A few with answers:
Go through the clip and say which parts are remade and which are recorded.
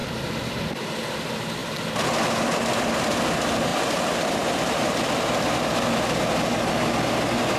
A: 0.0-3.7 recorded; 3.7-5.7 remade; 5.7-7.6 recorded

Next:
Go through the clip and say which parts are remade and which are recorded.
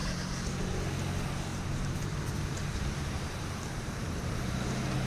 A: 0.0-1.5 recorded; 1.5-4.6 remade; 4.6-5.1 recorded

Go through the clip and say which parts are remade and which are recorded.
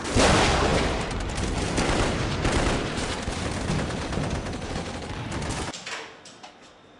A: 0.0-0.7 recorded; 0.7-1.3 remade; 1.3-7.0 recorded